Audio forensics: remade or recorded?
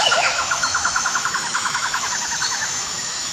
remade